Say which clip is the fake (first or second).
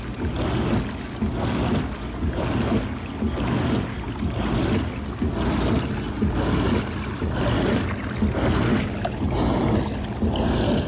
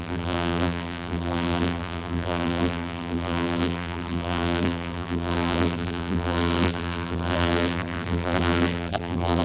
second